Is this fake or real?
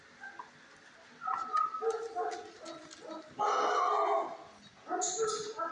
real